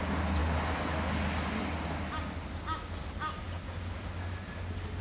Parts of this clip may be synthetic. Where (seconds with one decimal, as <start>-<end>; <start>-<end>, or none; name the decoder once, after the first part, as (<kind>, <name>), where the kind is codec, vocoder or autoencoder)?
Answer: none